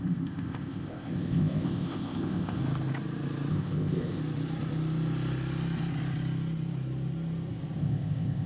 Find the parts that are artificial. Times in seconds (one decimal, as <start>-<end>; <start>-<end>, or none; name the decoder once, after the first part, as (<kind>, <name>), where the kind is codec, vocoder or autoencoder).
0.0-2.6 (codec, ZipCodec); 3.5-4.2; 7.8-8.5